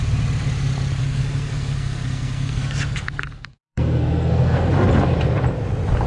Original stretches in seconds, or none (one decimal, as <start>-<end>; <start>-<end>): 0.0-1.0; 4.7-6.1